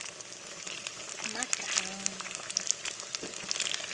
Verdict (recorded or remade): recorded